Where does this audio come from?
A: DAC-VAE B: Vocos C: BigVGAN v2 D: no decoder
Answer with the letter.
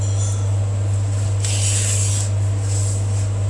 D